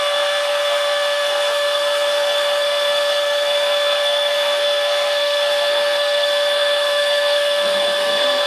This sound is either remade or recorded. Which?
remade